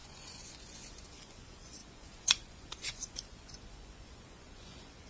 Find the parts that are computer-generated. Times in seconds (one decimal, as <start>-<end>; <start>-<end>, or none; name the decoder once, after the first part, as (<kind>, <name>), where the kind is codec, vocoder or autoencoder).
0.0-5.1 (vocoder, Vocos)